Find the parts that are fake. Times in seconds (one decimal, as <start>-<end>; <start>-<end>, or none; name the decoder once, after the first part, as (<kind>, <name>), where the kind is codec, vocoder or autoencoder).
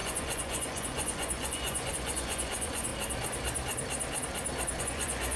0.0-2.9 (vocoder, Vocos); 4.8-5.4